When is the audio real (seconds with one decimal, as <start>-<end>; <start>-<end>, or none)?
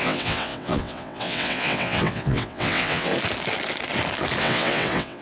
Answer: 3.1-4.4